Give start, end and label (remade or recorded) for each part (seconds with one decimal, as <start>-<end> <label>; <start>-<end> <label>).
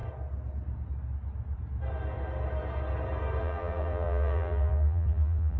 0.0-3.4 recorded; 3.4-5.6 remade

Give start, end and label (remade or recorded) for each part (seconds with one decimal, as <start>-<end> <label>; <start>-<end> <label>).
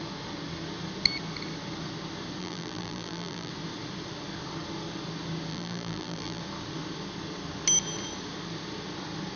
0.0-2.4 recorded; 2.4-3.5 remade; 3.5-5.5 recorded; 5.5-6.4 remade; 6.4-9.4 recorded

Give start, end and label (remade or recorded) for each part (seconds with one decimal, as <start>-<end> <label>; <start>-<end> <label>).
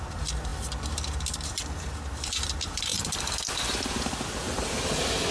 0.0-0.5 remade; 0.5-1.5 recorded; 1.5-5.3 remade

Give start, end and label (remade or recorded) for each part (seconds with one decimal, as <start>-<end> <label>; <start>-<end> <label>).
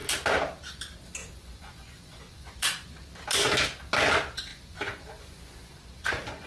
0.0-1.2 recorded; 1.2-2.9 remade; 2.9-4.5 recorded; 4.5-6.5 remade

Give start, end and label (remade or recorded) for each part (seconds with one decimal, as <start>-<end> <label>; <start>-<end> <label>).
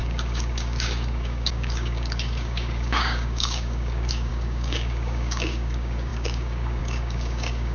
0.0-7.7 remade